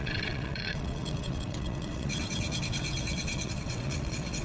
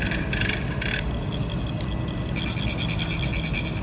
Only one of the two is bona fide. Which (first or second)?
second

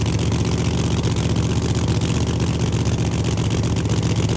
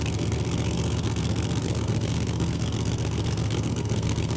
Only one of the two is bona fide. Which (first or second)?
first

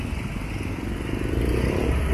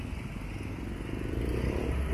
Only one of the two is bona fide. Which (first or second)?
second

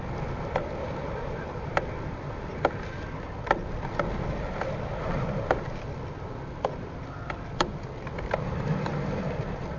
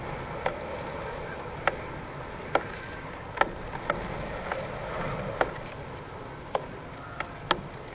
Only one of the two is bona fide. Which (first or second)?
second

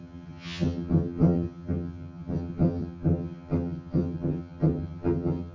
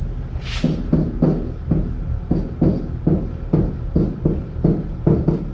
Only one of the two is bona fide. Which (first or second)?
second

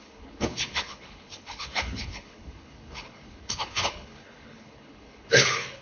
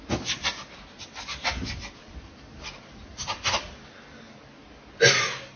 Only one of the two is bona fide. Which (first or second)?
second